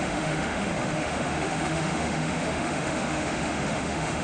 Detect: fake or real fake